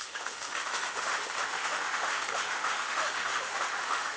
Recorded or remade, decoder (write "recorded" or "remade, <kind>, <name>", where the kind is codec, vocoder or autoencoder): remade, autoencoder, DAC-VAE